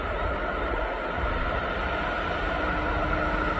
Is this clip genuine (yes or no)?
yes